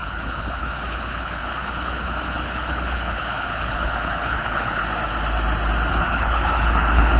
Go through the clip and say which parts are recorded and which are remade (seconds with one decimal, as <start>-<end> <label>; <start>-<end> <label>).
0.0-4.8 remade; 4.8-5.9 recorded; 5.9-7.2 remade